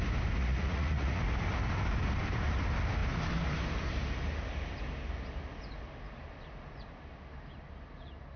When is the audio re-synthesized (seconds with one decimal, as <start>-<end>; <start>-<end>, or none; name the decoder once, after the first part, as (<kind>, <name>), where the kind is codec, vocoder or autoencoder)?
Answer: 0.4-1.2 (vocoder, Vocos)